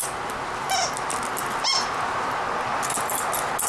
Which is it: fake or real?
real